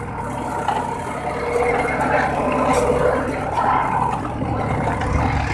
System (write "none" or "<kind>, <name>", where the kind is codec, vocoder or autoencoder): none